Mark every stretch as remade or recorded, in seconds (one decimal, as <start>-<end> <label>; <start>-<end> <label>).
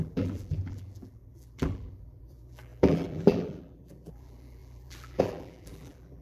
0.0-6.2 remade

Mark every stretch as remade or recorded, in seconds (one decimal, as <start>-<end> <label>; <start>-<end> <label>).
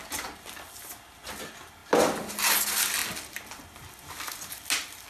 0.0-1.8 recorded; 1.8-2.3 remade; 2.3-5.1 recorded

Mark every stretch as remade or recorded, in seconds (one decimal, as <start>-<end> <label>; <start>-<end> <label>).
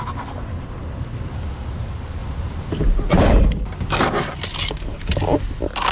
0.0-2.2 recorded; 2.2-4.3 remade; 4.3-5.9 recorded